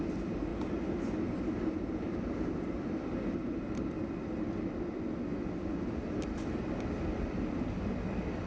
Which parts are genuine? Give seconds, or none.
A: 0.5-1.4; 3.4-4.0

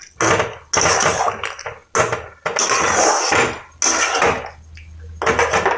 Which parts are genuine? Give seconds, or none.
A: 0.0-5.8

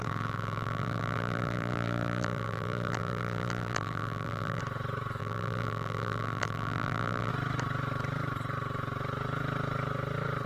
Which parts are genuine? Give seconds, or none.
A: 4.6-5.2; 7.3-10.5

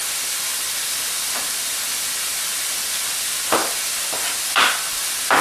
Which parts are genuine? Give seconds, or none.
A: 0.0-5.4

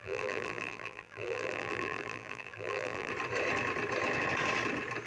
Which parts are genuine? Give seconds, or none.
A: 3.1-5.1

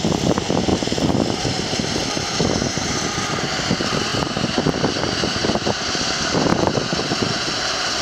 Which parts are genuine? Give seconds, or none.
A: 0.7-1.9; 6.5-7.0

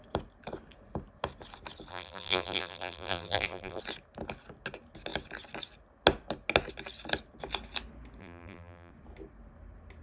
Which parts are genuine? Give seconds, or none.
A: 0.0-1.9; 3.8-8.2; 8.9-10.0